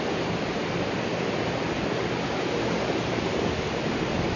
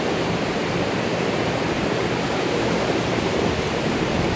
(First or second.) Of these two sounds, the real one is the first